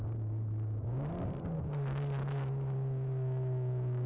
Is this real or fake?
fake